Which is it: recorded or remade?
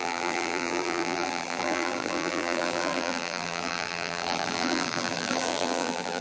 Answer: remade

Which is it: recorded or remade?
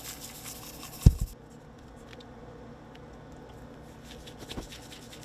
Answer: recorded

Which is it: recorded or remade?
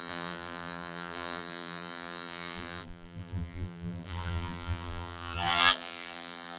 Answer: remade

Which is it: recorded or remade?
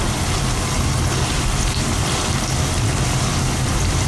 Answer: remade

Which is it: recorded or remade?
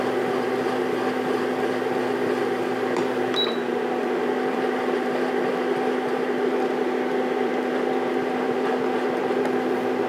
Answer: remade